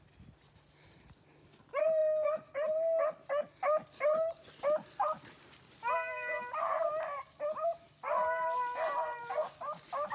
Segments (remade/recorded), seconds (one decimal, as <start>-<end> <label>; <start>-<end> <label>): 0.0-10.1 recorded